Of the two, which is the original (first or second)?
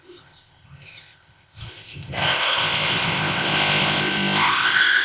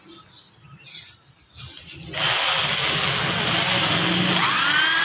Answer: second